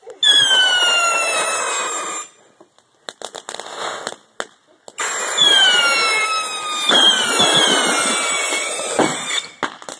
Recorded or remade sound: recorded